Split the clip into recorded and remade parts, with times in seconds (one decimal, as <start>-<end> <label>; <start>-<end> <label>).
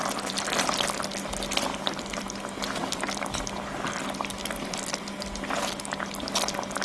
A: 0.0-0.5 remade; 0.5-1.7 recorded; 1.7-3.4 remade; 3.4-4.4 recorded; 4.4-5.7 remade; 5.7-6.8 recorded